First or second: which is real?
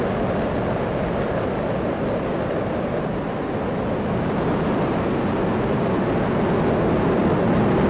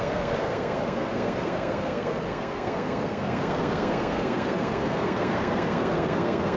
first